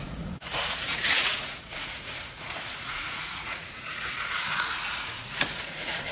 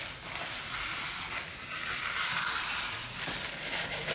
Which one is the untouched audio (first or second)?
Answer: second